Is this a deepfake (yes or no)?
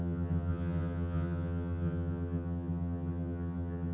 yes